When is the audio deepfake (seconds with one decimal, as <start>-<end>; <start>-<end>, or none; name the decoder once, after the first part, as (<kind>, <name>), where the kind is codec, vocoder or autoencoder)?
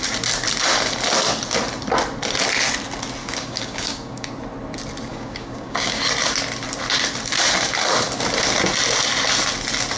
3.2-4.3 (codec, DAC); 5.1-6.0